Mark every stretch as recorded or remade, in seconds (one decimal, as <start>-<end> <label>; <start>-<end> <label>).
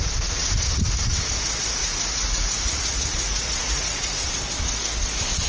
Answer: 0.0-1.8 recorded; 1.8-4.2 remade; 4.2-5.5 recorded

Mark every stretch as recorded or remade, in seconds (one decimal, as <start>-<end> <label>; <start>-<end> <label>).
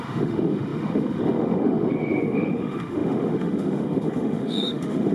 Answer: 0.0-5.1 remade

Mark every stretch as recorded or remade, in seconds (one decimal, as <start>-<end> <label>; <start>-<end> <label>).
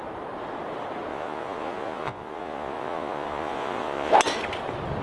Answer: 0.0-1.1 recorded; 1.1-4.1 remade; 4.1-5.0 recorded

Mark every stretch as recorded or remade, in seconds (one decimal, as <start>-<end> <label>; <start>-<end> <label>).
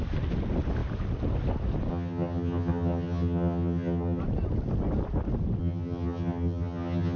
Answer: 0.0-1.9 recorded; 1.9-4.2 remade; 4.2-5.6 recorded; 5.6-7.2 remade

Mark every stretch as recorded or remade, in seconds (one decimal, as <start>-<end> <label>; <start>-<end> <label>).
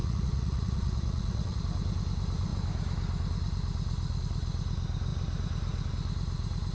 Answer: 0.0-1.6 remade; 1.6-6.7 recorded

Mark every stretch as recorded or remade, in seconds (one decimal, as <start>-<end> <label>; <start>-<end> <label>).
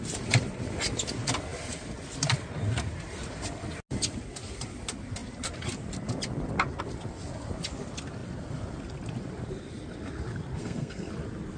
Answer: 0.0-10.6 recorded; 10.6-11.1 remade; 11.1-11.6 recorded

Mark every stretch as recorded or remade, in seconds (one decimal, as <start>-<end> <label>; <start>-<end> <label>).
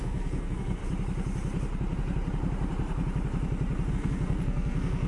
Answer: 0.0-0.8 remade; 0.8-3.9 recorded; 3.9-5.1 remade